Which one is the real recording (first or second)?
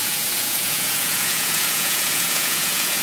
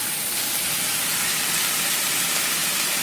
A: second